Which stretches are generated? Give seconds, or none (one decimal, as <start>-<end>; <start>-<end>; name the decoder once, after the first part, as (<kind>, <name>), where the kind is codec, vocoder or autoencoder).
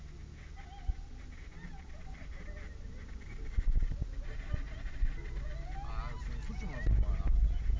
1.5-5.3 (vocoder, BigVGAN v2)